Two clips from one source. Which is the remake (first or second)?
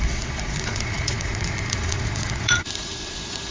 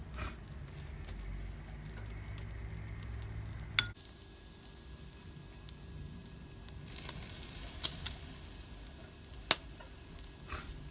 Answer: first